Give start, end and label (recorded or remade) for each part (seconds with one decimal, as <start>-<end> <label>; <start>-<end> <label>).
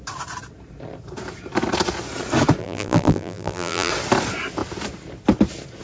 0.0-2.6 recorded; 2.6-3.9 remade; 3.9-5.8 recorded